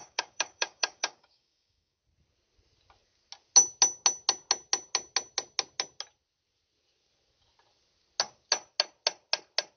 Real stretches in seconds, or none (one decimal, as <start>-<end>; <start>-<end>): 2.0-9.8